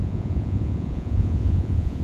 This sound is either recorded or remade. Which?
remade